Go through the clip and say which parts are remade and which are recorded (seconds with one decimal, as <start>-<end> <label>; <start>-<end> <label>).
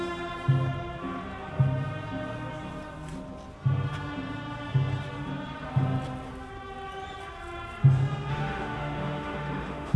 0.0-8.3 recorded; 8.3-10.0 remade